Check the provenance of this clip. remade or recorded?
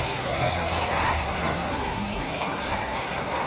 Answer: remade